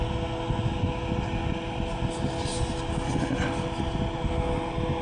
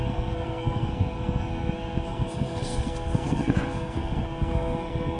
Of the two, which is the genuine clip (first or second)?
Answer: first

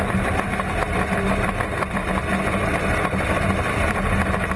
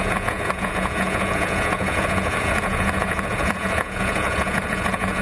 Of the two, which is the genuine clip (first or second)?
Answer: first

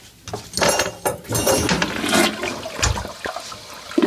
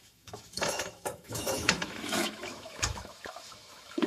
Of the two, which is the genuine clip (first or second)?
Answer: first